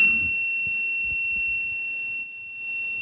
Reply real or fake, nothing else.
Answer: fake